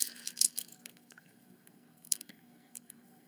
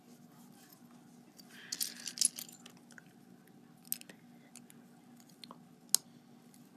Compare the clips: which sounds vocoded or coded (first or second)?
first